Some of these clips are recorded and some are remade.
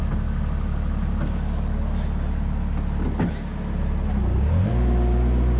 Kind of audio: recorded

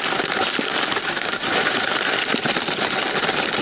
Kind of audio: recorded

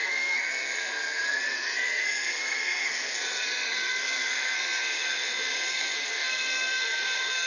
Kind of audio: remade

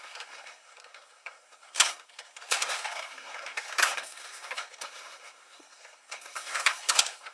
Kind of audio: remade